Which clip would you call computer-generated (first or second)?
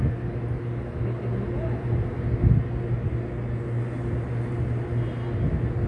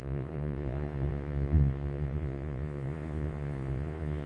second